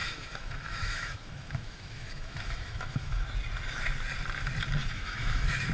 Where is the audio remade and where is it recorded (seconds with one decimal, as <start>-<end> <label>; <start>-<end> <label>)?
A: 0.0-3.2 remade; 3.2-4.8 recorded; 4.8-5.7 remade